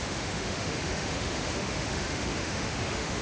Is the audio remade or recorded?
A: remade